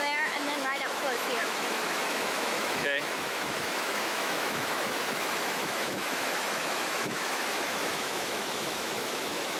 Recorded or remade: remade